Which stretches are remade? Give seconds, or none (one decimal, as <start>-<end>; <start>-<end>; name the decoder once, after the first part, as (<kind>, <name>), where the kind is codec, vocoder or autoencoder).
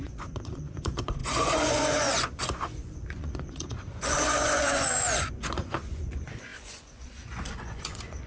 0.0-8.3 (vocoder, Vocos)